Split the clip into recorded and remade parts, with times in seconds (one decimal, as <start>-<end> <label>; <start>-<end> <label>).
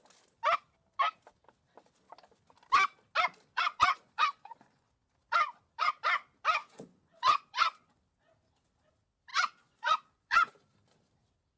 0.0-3.5 recorded; 3.5-4.9 remade; 4.9-6.6 recorded; 6.6-8.0 remade; 8.0-9.3 recorded; 9.3-10.5 remade; 10.5-11.6 recorded